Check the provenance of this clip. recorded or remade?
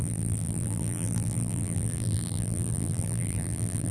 remade